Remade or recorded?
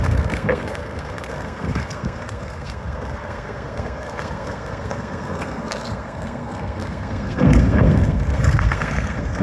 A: remade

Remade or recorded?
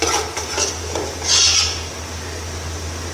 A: recorded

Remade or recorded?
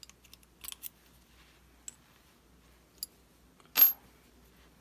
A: recorded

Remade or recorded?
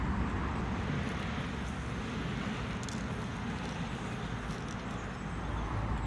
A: recorded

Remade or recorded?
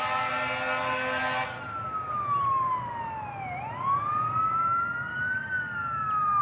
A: recorded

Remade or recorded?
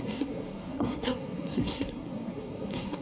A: remade